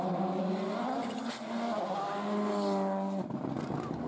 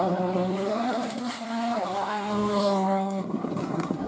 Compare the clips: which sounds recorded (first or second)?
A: first